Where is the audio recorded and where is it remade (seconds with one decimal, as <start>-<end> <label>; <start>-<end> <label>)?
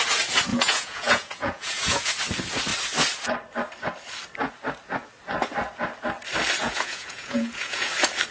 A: 0.0-0.5 recorded; 0.5-2.1 remade; 2.1-6.6 recorded; 6.6-7.9 remade; 7.9-8.3 recorded